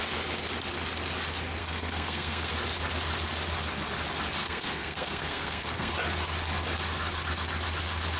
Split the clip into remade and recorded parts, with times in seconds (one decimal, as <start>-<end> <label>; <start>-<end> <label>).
0.0-1.6 recorded; 1.6-2.5 remade; 2.5-4.4 recorded; 4.4-5.9 remade; 5.9-8.2 recorded